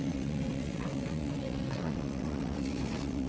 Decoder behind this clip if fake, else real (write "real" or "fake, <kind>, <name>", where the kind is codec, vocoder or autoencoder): fake, vocoder, WaveNeXt